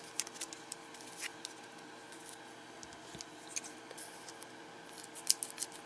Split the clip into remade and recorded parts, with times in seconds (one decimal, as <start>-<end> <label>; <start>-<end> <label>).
0.0-5.9 recorded